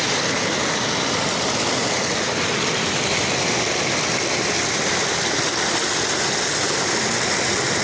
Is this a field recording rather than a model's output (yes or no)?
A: yes